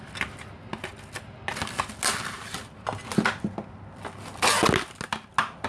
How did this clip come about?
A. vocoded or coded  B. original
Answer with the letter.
B